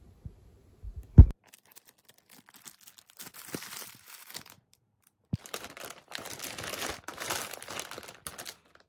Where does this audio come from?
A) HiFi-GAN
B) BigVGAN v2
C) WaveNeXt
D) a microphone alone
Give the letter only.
B